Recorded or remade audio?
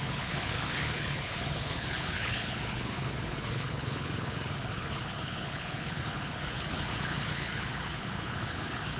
remade